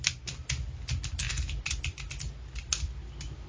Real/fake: real